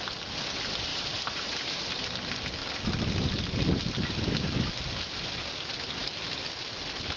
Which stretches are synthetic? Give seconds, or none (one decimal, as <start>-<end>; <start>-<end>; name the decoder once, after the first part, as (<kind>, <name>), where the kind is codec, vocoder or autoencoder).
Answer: 0.9-1.8 (vocoder, BigVGAN v2)